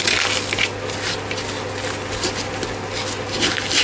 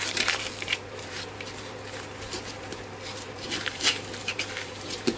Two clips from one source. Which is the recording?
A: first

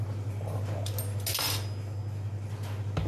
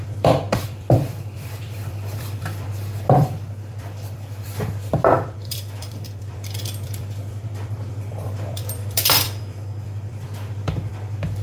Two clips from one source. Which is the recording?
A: first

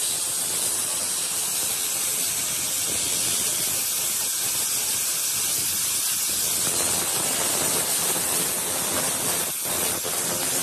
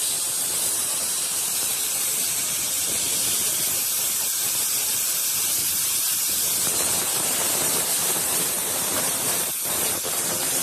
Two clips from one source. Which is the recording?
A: first